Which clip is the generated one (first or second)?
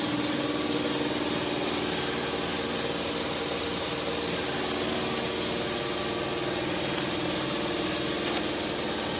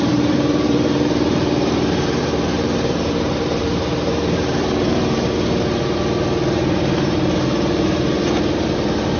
second